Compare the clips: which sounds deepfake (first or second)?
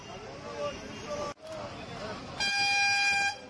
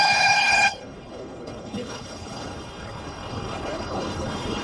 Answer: second